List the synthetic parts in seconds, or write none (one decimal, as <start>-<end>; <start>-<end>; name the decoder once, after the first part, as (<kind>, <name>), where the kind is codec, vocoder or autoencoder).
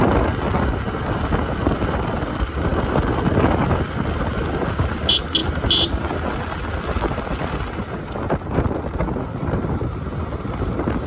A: none